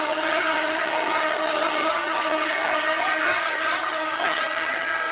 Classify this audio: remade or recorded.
remade